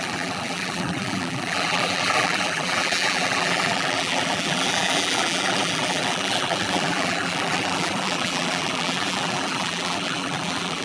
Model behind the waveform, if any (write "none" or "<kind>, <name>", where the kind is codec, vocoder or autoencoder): vocoder, BigVGAN v2